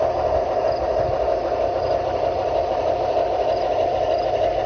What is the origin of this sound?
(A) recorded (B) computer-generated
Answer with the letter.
A